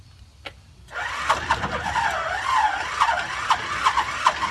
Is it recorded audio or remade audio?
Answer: recorded